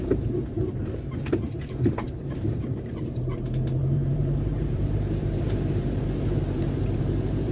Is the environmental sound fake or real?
fake